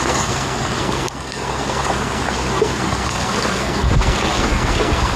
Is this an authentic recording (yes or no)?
no